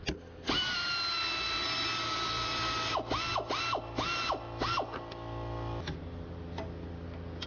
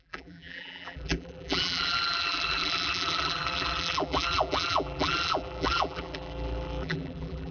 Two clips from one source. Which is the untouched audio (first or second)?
first